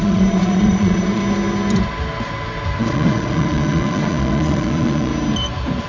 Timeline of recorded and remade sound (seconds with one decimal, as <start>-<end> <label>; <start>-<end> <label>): 0.0-1.2 remade; 1.2-2.8 recorded; 2.8-5.1 remade; 5.1-5.9 recorded

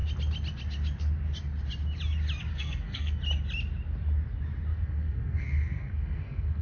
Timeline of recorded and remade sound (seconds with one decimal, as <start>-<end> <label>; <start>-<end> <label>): 0.0-2.5 recorded; 2.5-3.2 remade; 3.2-4.7 recorded; 4.7-6.6 remade

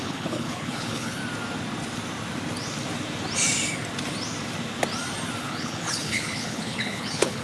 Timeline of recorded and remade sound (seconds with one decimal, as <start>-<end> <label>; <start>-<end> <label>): 0.0-1.2 remade; 1.2-5.4 recorded; 5.4-7.4 remade

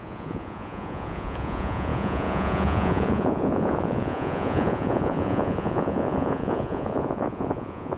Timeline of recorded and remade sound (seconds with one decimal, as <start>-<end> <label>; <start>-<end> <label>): 0.0-8.0 remade

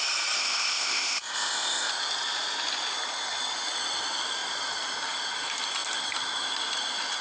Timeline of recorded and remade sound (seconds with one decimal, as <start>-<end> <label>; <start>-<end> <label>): 0.0-0.4 recorded; 0.4-1.9 remade; 1.9-7.2 recorded

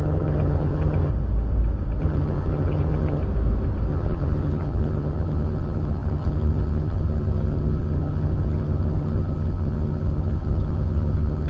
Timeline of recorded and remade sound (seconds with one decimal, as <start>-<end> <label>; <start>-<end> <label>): 0.0-1.1 remade; 1.1-2.0 recorded; 2.0-3.2 remade; 3.2-3.9 recorded; 3.9-11.5 remade

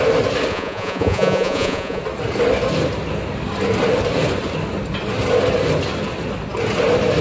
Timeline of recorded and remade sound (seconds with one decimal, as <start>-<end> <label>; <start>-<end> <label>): 0.0-0.5 recorded; 0.5-2.0 remade; 2.0-7.2 recorded